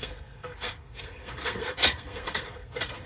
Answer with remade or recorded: remade